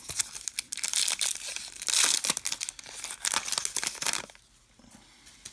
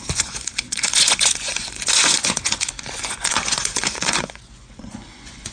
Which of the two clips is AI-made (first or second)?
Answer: second